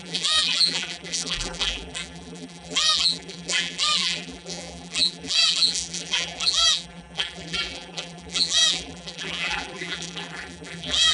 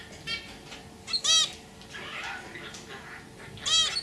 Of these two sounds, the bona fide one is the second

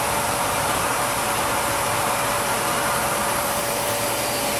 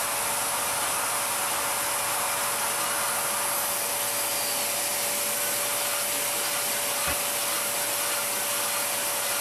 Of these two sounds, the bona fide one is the second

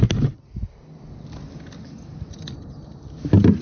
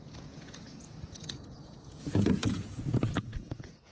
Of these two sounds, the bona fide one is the first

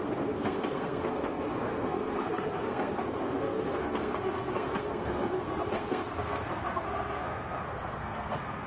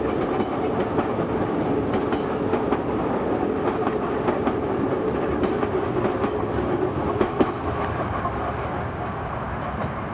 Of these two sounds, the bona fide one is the second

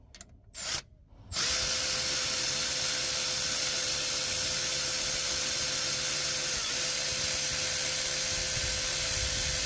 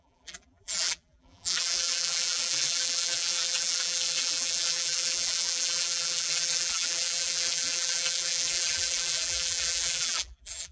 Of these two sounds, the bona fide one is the first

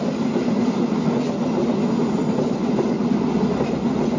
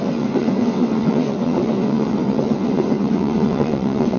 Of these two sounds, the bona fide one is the first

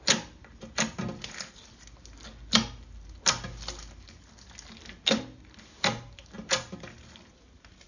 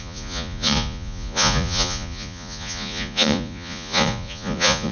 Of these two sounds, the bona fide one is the first